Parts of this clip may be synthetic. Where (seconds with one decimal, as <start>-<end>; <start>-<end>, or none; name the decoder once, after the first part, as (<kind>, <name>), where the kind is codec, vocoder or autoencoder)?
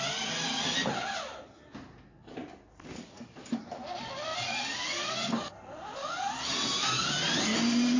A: none